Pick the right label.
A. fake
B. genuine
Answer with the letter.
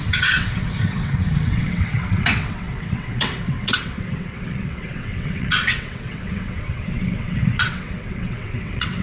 A